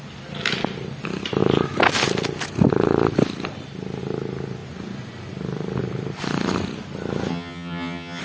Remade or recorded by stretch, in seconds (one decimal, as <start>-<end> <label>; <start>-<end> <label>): 0.0-7.3 recorded; 7.3-8.2 remade